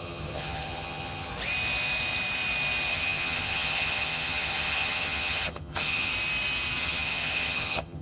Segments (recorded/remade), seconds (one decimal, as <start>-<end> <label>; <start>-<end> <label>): 0.0-1.3 remade; 1.3-2.9 recorded; 2.9-6.1 remade; 6.1-6.8 recorded; 6.8-8.0 remade